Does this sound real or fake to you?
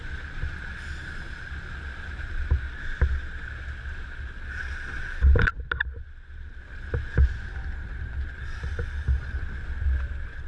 real